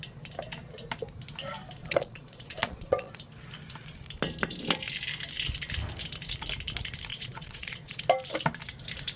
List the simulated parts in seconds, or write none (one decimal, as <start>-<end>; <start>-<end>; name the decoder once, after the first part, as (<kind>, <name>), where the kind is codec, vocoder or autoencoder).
1.8-3.1 (vocoder, Vocos); 7.1-8.0